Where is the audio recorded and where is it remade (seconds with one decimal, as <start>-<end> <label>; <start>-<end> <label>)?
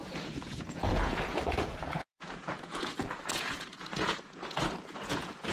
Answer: 0.0-5.5 remade